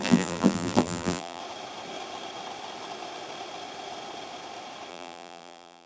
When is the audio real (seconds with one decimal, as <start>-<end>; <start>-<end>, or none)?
1.4-4.9